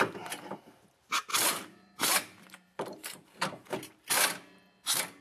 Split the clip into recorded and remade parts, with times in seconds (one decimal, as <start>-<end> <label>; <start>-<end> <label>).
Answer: 0.0-1.3 recorded; 1.3-3.9 remade; 3.9-5.2 recorded